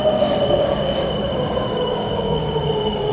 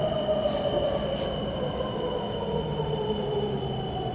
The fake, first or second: first